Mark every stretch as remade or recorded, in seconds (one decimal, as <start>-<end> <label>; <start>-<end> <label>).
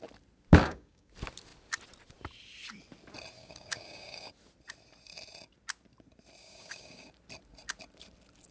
0.0-0.6 recorded; 0.6-1.1 remade; 1.1-3.4 recorded; 3.4-4.3 remade; 4.3-6.4 recorded; 6.4-7.1 remade; 7.1-8.5 recorded